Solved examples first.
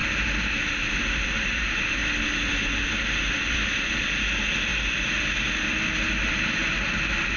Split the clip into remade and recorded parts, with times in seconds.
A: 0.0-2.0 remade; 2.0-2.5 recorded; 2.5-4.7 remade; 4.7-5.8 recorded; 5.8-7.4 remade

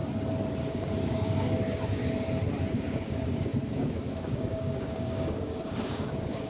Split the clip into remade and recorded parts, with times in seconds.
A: 0.0-0.6 recorded; 0.6-2.0 remade; 2.0-2.7 recorded; 2.7-6.5 remade

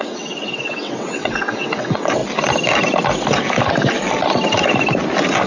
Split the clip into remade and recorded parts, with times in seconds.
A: 0.0-2.2 remade; 2.2-5.5 recorded

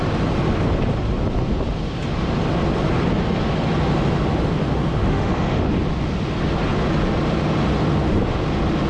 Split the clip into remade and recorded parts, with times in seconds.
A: 0.0-5.0 recorded; 5.0-5.7 remade; 5.7-8.9 recorded